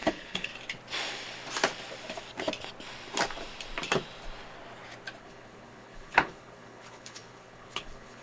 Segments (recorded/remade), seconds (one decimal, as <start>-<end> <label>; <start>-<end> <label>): 0.0-0.5 remade; 0.5-5.2 recorded; 5.2-8.2 remade